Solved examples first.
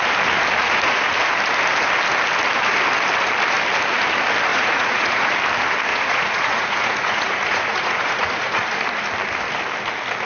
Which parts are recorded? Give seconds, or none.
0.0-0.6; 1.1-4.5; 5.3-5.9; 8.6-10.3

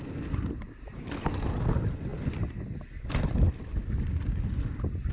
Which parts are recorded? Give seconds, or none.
0.0-5.1

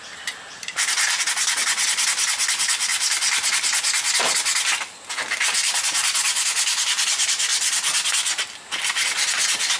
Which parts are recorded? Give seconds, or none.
0.0-9.8

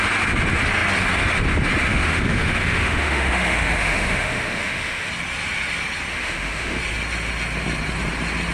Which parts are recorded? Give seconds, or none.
0.0-1.9; 5.1-6.1; 6.8-8.5

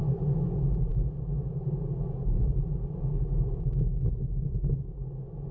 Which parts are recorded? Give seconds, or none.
0.0-5.5